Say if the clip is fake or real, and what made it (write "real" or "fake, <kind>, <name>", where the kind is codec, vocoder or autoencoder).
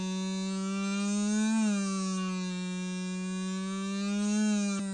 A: real